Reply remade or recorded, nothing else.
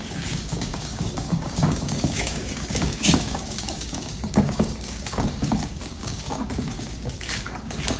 remade